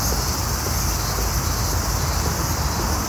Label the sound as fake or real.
real